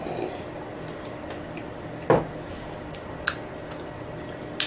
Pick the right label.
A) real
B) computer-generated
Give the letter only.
A